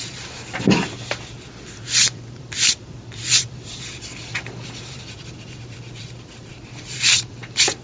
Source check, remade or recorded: remade